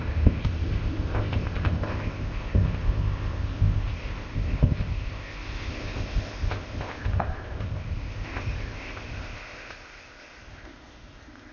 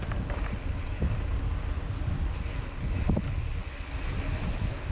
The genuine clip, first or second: second